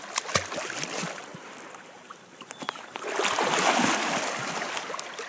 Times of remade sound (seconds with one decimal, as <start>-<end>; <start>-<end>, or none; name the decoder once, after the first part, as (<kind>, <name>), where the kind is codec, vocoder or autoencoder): 1.3-4.5 (vocoder, BigVGAN v2)